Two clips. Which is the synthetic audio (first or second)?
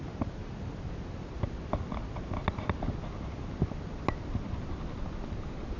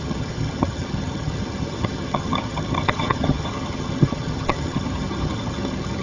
second